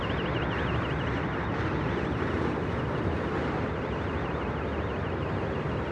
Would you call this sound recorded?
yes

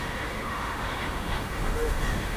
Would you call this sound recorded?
no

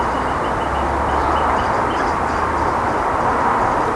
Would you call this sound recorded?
yes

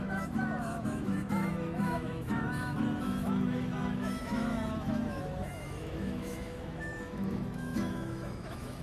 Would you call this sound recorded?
no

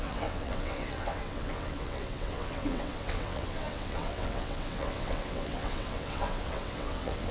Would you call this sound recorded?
no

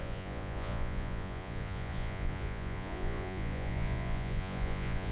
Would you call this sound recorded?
no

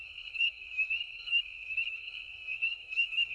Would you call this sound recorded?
no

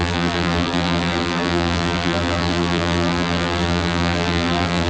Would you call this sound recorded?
no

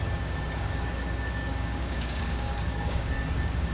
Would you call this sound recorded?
no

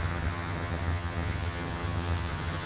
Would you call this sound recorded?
no